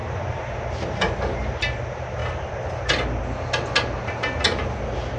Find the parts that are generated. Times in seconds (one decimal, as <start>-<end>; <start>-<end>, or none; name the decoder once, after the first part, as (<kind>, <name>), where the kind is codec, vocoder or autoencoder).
0.0-2.2 (vocoder, BigVGAN v2)